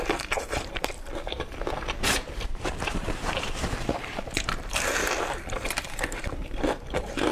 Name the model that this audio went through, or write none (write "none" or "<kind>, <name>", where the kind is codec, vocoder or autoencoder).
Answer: vocoder, BigVGAN v2